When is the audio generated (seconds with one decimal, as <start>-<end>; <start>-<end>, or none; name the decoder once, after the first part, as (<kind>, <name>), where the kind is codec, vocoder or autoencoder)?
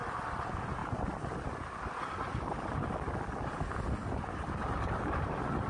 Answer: none